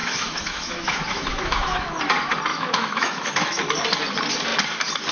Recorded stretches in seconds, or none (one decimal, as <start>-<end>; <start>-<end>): 2.0-2.5; 3.6-5.1